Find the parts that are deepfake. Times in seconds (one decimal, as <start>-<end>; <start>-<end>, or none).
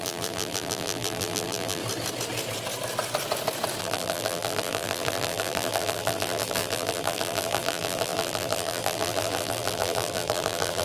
0.0-1.8; 3.8-10.8